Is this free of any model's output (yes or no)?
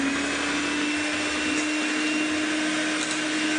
yes